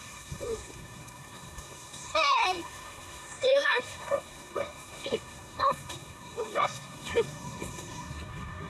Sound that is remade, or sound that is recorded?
remade